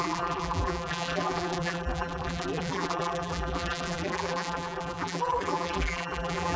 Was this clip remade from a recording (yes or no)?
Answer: yes